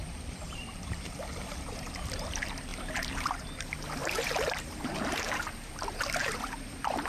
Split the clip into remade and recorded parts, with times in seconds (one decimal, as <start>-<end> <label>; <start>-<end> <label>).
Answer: 0.0-1.9 remade; 1.9-2.7 recorded; 2.7-3.3 remade; 3.3-4.0 recorded; 4.0-5.7 remade; 5.7-6.2 recorded; 6.2-7.1 remade